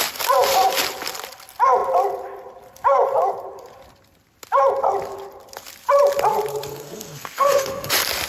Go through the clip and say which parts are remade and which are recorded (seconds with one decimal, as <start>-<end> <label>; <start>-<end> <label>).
0.0-6.7 recorded; 6.7-7.9 remade; 7.9-8.3 recorded